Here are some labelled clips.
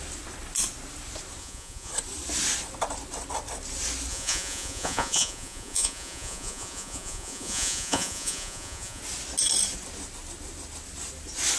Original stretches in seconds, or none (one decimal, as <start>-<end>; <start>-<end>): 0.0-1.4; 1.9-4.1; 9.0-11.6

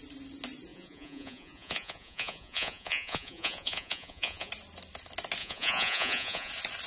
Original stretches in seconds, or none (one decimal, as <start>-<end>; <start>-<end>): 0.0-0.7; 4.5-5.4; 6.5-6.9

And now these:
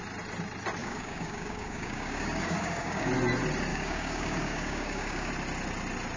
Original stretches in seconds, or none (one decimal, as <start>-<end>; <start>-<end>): 0.0-0.8; 3.1-3.7; 5.3-6.2

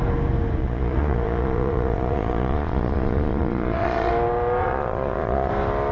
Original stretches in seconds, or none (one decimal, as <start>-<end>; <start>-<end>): 0.0-0.6; 4.1-4.6; 5.5-5.9

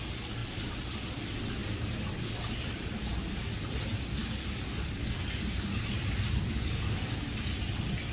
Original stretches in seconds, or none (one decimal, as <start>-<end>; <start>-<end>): 0.0-8.1

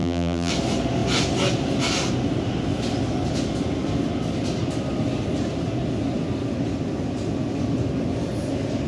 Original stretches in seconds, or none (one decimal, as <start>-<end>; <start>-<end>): 0.5-8.9

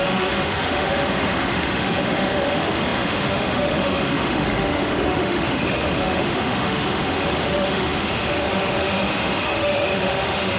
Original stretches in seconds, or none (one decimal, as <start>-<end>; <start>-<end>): none